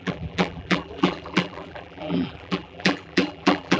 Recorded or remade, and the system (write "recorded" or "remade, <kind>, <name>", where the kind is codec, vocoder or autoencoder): remade, vocoder, BigVGAN v2